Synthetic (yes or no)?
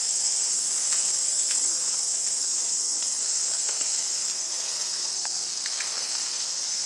yes